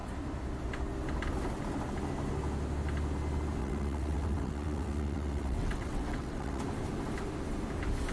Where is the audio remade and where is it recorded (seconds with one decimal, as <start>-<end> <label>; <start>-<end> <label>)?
0.0-3.6 recorded; 3.6-6.6 remade; 6.6-8.1 recorded